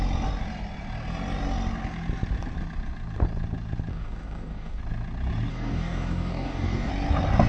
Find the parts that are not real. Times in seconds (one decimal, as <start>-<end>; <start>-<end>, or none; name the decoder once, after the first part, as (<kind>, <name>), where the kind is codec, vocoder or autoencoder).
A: 3.9-4.8 (codec, DAC); 5.5-6.9